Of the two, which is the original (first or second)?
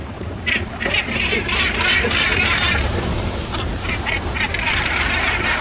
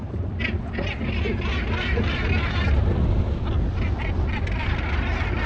second